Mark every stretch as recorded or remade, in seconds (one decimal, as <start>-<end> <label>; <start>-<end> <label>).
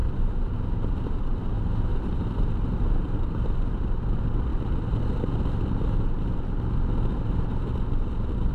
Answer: 0.0-1.1 remade; 1.1-1.9 recorded; 1.9-3.8 remade; 3.8-4.5 recorded; 4.5-5.4 remade; 5.4-8.5 recorded